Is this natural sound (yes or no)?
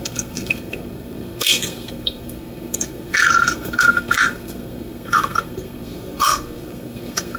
no